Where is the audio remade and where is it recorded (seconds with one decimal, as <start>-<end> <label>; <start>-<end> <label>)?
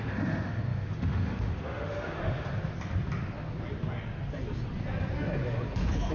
0.0-2.5 remade; 2.5-6.1 recorded